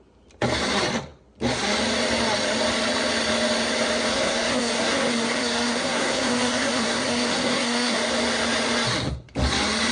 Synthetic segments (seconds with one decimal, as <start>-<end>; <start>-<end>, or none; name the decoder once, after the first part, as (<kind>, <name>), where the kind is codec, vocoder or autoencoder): 4.1-8.0 (codec, SNAC)

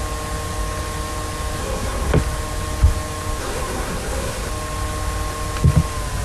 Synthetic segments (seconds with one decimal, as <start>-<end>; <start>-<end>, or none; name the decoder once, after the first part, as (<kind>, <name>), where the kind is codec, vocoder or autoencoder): 1.6-2.1 (codec, SNAC); 3.4-4.5